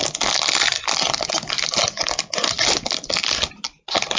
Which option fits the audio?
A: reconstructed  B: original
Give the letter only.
B